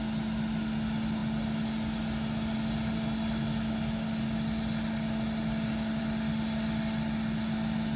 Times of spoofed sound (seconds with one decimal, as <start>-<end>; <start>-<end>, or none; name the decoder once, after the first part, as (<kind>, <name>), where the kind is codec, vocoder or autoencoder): none